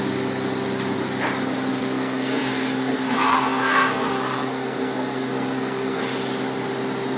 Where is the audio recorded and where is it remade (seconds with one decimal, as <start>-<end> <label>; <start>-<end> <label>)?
0.0-1.7 recorded; 1.7-6.0 remade; 6.0-7.2 recorded